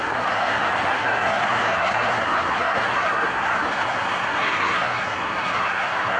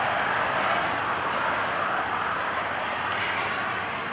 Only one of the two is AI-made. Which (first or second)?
first